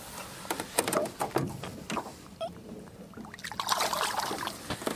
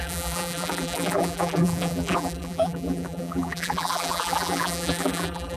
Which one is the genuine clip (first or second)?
first